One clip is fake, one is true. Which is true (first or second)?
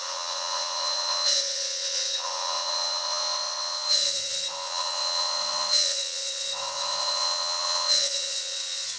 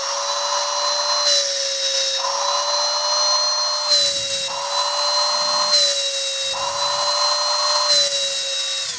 second